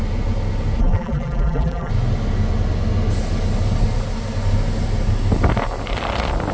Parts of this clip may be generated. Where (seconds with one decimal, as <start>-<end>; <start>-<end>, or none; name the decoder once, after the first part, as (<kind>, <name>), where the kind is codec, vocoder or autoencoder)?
0.8-1.9 (vocoder, BigVGAN v2)